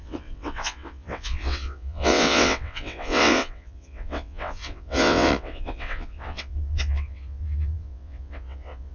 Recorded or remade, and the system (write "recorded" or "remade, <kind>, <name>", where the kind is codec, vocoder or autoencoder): remade, vocoder, WaveNeXt